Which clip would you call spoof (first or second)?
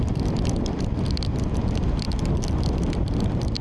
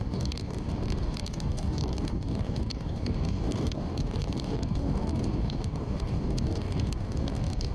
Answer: second